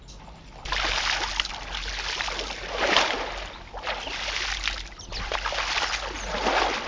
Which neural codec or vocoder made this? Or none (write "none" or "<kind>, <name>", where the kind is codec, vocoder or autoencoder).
none